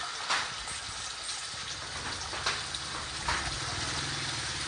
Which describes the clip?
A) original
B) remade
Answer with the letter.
A